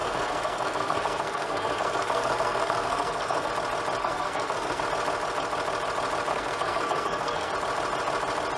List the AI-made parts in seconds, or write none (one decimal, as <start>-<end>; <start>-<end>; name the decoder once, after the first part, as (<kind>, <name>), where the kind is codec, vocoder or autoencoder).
0.0-3.5 (codec, SNAC); 4.0-4.8; 6.3-7.5